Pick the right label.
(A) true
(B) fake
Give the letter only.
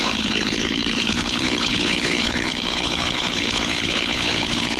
B